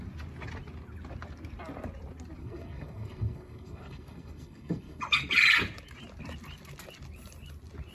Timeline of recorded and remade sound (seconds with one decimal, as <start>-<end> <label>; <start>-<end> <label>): 0.0-2.4 recorded; 2.4-5.0 remade; 5.0-7.9 recorded